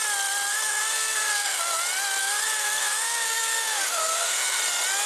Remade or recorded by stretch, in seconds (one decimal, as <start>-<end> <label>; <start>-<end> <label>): 0.0-0.5 recorded; 0.5-1.6 remade; 1.6-2.2 recorded; 2.2-4.6 remade; 4.6-5.1 recorded